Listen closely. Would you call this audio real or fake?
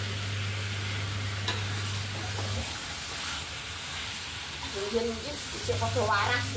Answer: real